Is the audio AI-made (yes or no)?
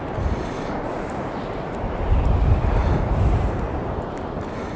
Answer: yes